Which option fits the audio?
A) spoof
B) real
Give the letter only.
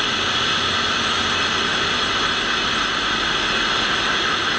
B